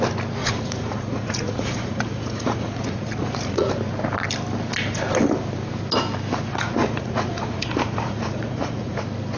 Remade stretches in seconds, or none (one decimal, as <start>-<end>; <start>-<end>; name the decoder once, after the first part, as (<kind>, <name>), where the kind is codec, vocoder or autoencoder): 0.4-3.7 (vocoder, Vocos); 6.5-9.0